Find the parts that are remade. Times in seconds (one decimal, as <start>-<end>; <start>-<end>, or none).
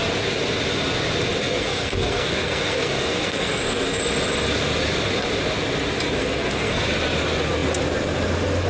1.4-4.0; 6.2-6.8